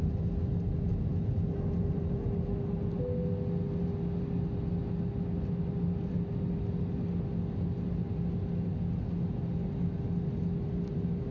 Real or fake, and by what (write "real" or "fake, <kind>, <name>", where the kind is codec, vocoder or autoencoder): real